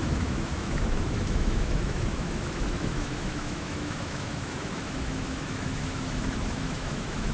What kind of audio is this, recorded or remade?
remade